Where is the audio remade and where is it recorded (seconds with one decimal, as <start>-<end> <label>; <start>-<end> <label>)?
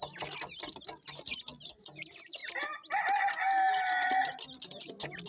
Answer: 0.0-5.3 recorded